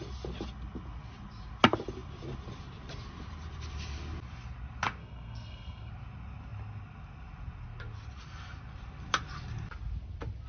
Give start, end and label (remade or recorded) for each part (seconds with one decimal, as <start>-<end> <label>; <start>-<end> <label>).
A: 0.0-5.0 recorded; 5.0-5.9 remade; 5.9-10.5 recorded